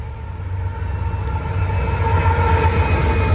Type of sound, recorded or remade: recorded